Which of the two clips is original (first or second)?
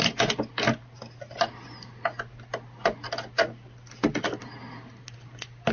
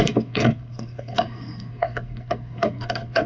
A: first